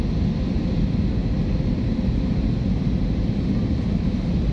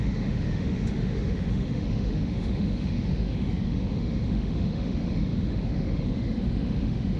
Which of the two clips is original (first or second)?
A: first